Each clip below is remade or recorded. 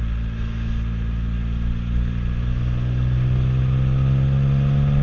recorded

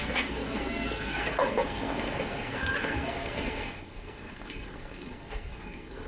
remade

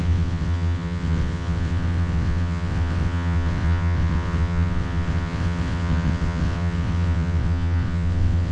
remade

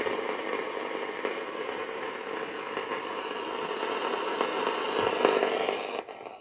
recorded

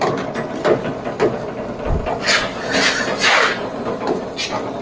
recorded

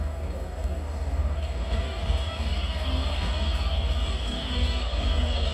remade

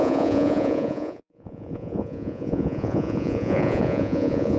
remade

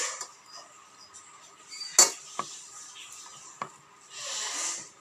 recorded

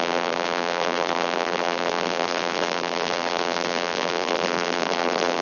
remade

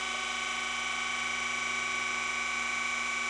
recorded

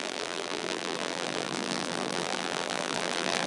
remade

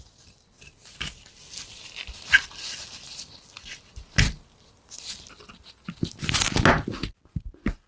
recorded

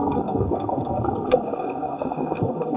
remade